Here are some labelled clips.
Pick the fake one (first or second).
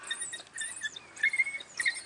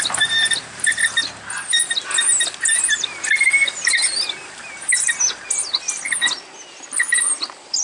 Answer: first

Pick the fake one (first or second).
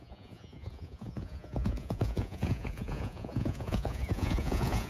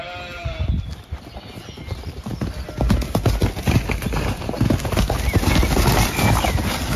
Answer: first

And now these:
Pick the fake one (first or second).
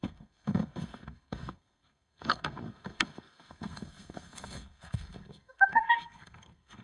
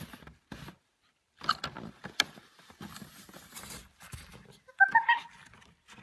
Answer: first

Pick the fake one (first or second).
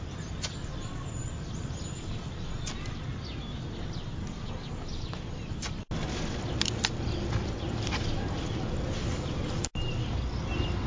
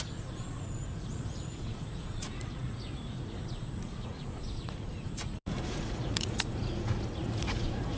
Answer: second